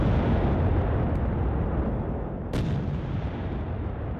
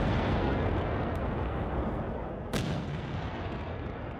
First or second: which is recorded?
first